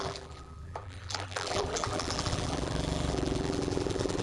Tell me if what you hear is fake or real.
fake